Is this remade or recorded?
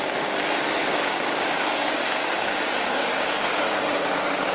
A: remade